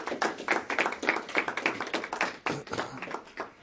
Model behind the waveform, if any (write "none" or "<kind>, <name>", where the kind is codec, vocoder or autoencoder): none